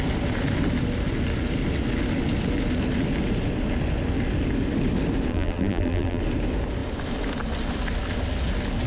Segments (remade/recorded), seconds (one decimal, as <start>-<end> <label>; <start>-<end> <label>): 0.0-5.3 recorded; 5.3-6.2 remade; 6.2-8.9 recorded